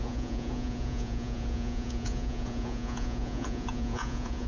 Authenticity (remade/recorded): remade